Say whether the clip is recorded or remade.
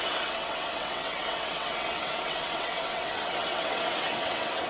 remade